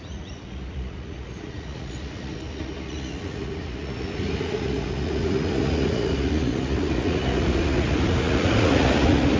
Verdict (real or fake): fake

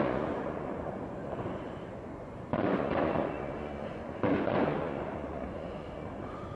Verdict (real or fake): fake